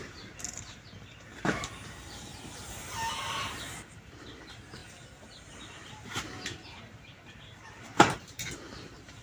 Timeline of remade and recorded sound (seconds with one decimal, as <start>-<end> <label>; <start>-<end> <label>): 0.0-2.3 remade; 2.3-3.2 recorded; 3.2-9.2 remade